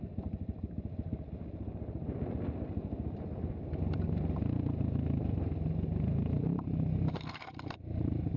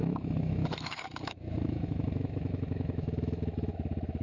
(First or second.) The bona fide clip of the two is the first